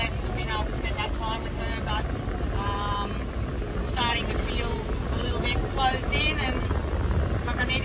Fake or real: real